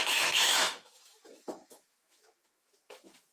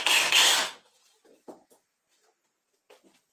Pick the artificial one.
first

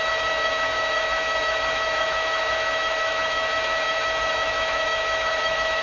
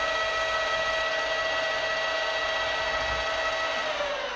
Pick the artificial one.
first